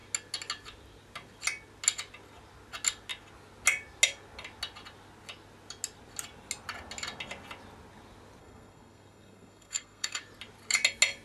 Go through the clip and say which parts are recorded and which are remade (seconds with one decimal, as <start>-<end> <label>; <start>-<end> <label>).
0.0-8.4 recorded; 8.4-10.2 remade; 10.2-11.2 recorded